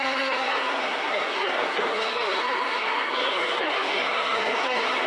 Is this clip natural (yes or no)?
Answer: no